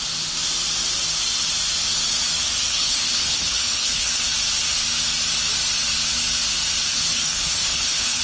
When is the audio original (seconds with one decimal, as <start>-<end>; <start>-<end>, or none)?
0.0-2.7; 4.2-6.9